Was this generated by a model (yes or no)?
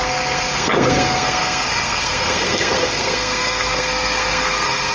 yes